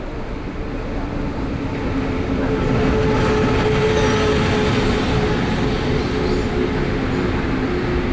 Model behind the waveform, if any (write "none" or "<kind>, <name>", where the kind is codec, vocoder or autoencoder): none